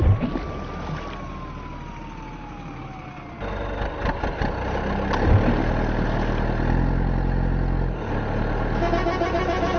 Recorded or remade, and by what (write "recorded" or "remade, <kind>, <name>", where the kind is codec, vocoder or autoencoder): recorded